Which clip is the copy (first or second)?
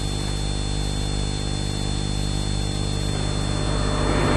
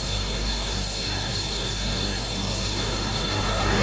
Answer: second